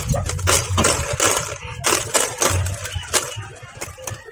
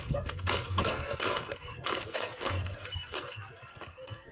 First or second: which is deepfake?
second